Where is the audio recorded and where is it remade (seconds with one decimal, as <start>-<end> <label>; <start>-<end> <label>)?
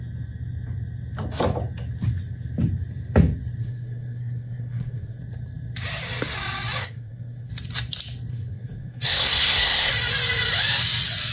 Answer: 0.0-3.6 recorded; 3.6-5.2 remade; 5.2-6.8 recorded; 6.8-7.5 remade; 7.5-8.3 recorded; 8.3-9.9 remade; 9.9-11.3 recorded